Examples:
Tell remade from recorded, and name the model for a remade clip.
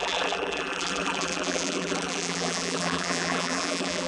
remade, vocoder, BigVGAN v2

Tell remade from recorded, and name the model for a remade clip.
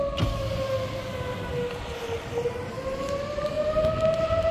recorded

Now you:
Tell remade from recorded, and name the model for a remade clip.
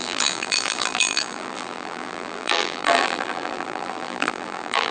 remade, vocoder, BigVGAN v2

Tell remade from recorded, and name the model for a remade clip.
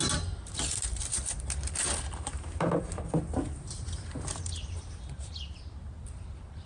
remade, vocoder, BigVGAN v2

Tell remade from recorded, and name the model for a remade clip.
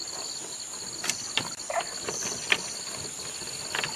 recorded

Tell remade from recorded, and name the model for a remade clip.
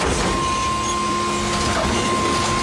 recorded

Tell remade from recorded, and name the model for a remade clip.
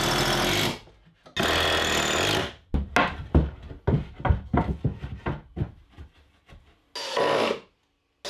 recorded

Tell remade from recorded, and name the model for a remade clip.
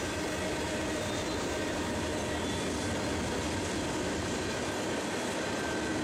recorded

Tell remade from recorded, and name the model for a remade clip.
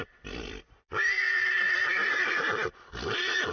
remade, vocoder, BigVGAN v2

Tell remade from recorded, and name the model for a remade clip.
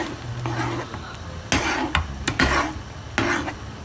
recorded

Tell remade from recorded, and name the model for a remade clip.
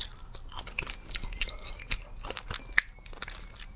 recorded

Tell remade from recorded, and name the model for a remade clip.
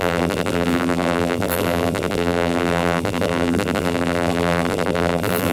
remade, vocoder, BigVGAN v2